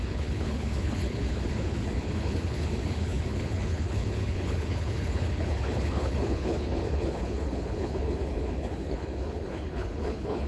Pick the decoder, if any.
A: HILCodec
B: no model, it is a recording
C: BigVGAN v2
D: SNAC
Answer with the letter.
A